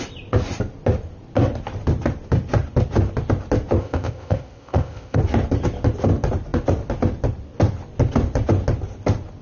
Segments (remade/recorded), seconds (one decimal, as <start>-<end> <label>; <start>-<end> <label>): 0.0-3.8 recorded; 3.8-5.2 remade; 5.2-9.4 recorded